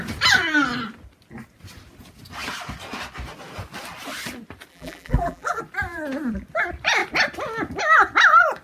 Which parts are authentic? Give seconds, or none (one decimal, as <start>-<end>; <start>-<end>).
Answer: 0.0-4.7; 5.6-8.6